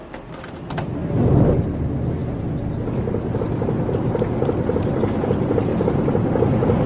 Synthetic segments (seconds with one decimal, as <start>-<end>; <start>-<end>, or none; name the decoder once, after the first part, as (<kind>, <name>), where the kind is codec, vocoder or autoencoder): none